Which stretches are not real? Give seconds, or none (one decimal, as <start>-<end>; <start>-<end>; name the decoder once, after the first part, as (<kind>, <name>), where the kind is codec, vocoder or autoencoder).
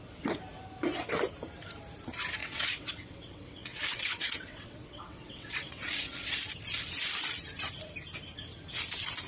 2.4-6.2 (vocoder, WaveNeXt)